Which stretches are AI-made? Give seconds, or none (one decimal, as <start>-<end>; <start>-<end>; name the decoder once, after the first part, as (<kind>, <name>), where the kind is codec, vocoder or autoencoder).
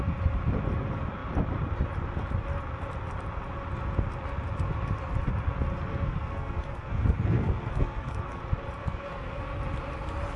5.9-8.4 (codec, SNAC); 8.8-9.4